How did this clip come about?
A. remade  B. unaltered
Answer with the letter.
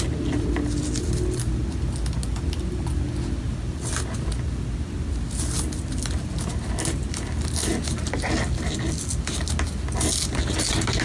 B